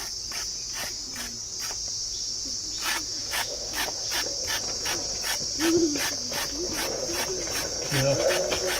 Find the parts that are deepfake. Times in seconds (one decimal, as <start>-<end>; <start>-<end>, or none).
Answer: 3.2-3.9